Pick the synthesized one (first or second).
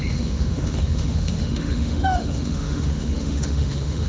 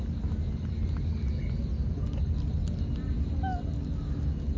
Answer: first